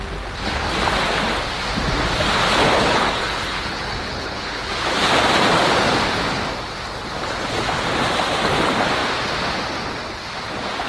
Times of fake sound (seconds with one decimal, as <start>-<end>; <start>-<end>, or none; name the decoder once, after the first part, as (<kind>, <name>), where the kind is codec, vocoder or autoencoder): 2.6-4.7 (codec, HILCodec)